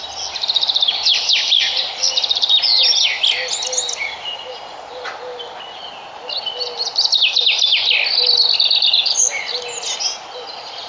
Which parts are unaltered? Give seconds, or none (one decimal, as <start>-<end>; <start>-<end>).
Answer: 0.0-10.9

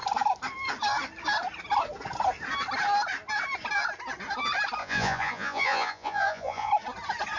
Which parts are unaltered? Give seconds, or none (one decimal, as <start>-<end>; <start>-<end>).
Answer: 0.0-4.8; 6.7-7.4